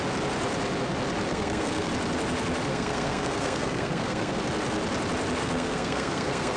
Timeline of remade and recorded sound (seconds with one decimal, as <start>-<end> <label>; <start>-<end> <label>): 0.0-1.3 recorded; 1.3-1.9 remade; 1.9-2.7 recorded; 2.7-4.4 remade; 4.4-5.4 recorded; 5.4-6.6 remade